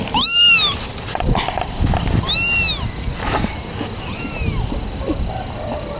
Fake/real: real